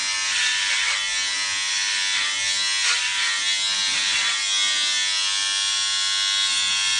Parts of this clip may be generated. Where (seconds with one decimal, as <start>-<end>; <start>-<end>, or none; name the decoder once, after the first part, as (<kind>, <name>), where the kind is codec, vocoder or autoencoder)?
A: none